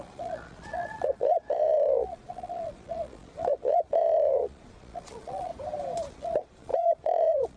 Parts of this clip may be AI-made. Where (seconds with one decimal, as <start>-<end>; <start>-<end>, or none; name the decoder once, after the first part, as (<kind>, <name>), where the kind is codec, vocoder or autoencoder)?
0.0-5.5 (vocoder, Vocos); 6.1-7.6